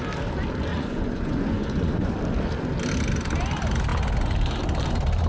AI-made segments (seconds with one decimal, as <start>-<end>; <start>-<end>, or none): 0.7-2.1